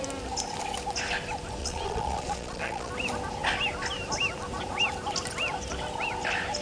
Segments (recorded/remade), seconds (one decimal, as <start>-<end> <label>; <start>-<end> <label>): 0.0-1.6 recorded; 1.6-2.9 remade; 2.9-6.6 recorded